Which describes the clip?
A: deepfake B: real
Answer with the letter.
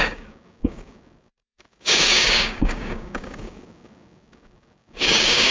A